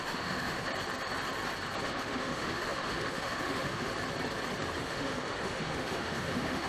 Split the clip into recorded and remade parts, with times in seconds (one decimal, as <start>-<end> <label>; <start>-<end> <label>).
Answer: 0.0-0.7 remade; 0.7-1.8 recorded; 1.8-3.9 remade; 3.9-4.8 recorded; 4.8-6.7 remade